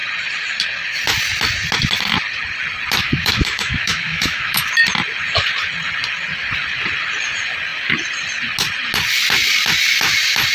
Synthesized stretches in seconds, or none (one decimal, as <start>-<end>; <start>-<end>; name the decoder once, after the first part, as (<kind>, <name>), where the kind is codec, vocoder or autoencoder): 3.0-4.7 (autoencoder, DAC-VAE)